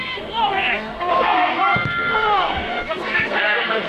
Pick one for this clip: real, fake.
fake